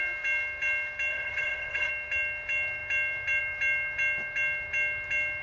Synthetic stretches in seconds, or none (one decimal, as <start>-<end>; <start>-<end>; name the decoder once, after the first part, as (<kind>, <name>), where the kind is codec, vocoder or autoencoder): 1.1-1.9 (vocoder, WaveNeXt)